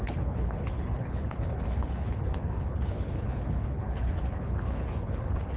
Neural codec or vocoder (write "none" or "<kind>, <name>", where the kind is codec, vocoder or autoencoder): codec, HILCodec